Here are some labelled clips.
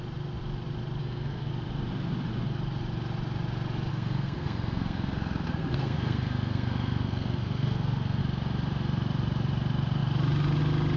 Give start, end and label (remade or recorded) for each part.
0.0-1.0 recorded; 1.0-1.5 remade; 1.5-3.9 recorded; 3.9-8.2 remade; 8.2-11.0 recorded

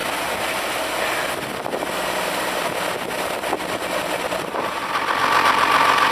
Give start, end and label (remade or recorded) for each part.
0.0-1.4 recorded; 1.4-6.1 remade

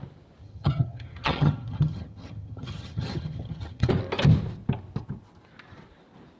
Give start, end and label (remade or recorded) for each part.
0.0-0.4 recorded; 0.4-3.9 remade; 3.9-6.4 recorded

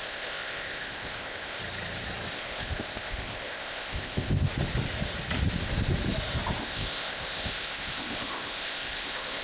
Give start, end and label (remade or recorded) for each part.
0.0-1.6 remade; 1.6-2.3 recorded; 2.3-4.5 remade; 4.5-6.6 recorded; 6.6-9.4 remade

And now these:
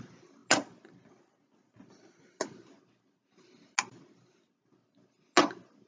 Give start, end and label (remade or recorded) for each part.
0.0-5.9 recorded